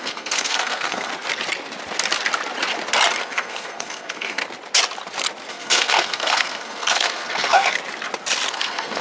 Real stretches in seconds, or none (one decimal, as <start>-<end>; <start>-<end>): 1.1-3.2; 4.4-5.5; 7.8-8.5